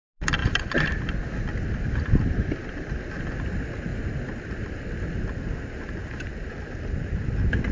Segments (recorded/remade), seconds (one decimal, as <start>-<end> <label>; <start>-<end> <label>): 0.0-7.7 recorded